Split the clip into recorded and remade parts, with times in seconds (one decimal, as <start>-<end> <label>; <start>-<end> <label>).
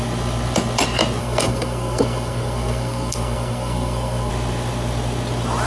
0.0-1.2 recorded; 1.2-4.3 remade; 4.3-5.7 recorded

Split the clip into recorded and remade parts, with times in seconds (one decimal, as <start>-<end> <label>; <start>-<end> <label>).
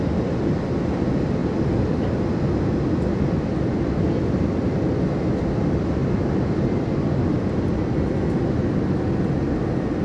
0.0-6.0 recorded; 6.0-6.6 remade; 6.6-10.0 recorded